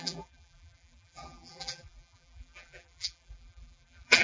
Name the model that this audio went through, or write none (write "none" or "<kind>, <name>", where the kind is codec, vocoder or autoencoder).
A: vocoder, BigVGAN v2